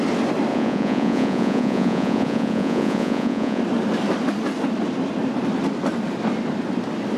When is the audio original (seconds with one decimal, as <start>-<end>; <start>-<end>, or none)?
0.0-0.5; 3.6-7.2